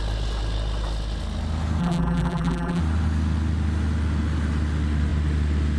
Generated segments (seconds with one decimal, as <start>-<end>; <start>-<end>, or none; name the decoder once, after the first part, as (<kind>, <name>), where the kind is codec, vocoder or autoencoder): 1.8-2.8 (vocoder, BigVGAN v2)